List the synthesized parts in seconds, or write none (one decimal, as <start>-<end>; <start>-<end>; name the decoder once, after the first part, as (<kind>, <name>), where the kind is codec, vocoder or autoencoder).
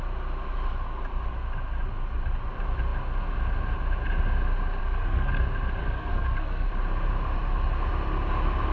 4.8-5.3 (codec, SNAC); 5.8-6.7